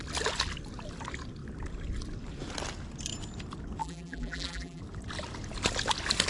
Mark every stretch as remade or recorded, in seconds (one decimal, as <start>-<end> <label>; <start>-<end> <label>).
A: 0.0-3.8 recorded; 3.8-4.8 remade; 4.8-6.3 recorded